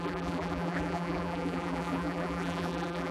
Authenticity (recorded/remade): remade